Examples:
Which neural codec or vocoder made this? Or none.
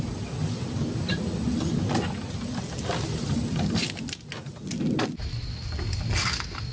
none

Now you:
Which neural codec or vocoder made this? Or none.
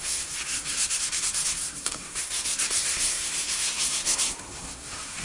codec, SNAC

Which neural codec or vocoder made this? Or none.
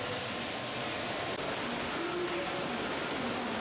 none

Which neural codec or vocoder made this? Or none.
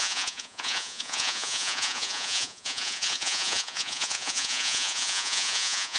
vocoder, Vocos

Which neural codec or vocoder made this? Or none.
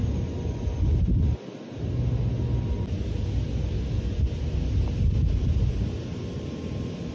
none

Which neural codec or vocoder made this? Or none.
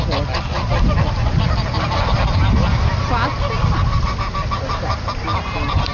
none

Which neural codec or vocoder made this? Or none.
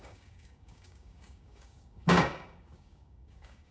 codec, DAC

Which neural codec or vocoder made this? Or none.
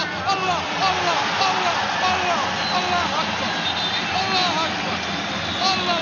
none